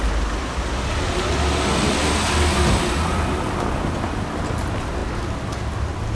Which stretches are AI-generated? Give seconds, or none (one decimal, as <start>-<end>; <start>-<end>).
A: none